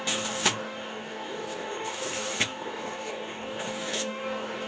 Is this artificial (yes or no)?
yes